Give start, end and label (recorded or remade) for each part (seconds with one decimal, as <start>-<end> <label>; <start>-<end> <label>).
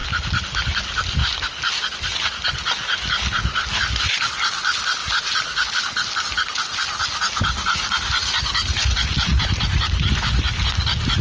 0.0-5.0 recorded; 5.0-5.7 remade; 5.7-9.3 recorded; 9.3-10.1 remade; 10.1-11.2 recorded